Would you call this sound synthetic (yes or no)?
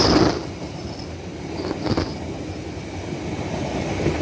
no